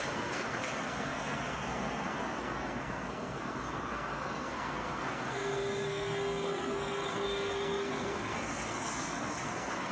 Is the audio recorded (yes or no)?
no